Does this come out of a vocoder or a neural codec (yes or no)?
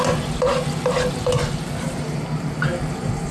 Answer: no